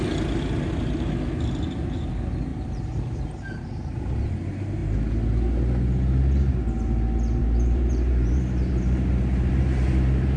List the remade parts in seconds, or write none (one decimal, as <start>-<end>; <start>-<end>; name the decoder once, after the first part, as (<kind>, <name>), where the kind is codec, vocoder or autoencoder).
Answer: 2.5-4.3 (vocoder, BigVGAN v2); 7.4-10.4